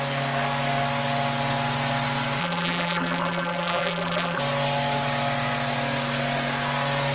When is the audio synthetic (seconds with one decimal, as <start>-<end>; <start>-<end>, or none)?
2.4-4.4